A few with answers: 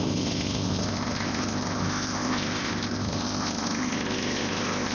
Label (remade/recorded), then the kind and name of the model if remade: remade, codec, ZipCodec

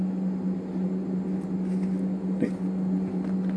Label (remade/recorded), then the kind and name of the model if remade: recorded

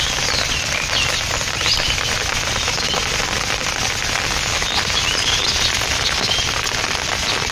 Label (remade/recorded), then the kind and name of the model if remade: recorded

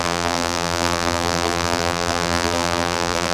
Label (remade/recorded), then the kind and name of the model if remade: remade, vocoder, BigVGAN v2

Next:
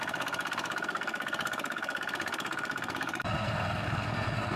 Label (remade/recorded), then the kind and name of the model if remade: remade, codec, SNAC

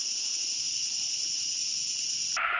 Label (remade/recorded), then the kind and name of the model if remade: recorded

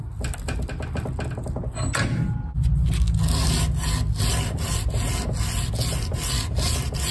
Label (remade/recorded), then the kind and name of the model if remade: recorded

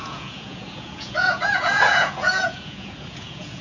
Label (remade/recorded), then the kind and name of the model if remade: remade, vocoder, Vocos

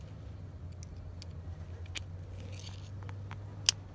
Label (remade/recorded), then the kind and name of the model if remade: recorded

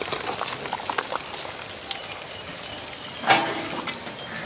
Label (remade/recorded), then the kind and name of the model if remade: recorded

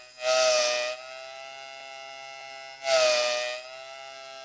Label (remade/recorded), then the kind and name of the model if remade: recorded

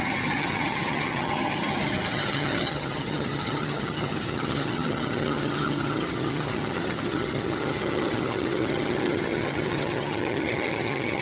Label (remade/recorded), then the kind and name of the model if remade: remade, vocoder, HiFi-GAN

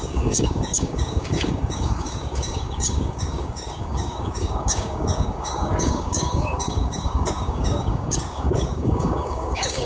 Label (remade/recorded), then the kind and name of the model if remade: remade, codec, DAC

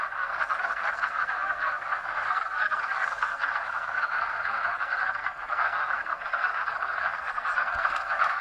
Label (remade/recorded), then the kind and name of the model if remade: remade, codec, SNAC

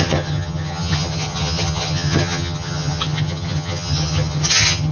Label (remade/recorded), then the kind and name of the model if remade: remade, vocoder, HiFi-GAN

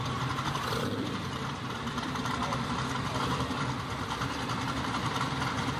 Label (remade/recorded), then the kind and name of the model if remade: remade, vocoder, BigVGAN v2